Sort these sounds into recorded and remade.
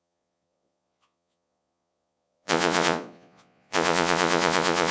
remade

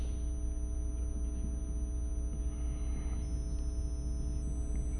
recorded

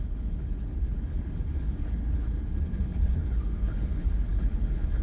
remade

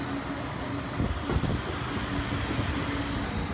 recorded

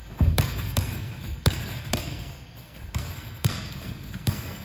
remade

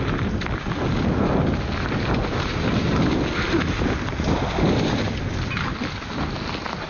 recorded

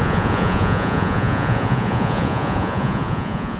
remade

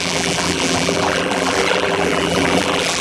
remade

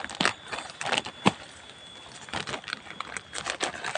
recorded